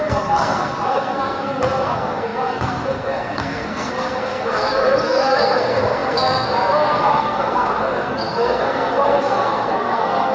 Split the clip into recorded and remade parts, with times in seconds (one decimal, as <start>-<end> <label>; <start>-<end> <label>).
0.0-10.3 remade